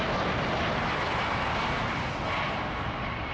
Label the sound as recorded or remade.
recorded